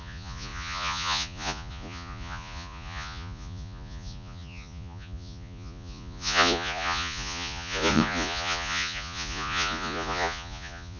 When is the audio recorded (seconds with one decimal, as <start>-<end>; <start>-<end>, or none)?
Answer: none